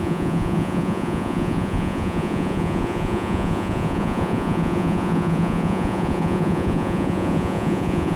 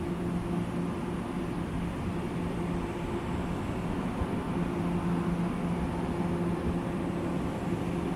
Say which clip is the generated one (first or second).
first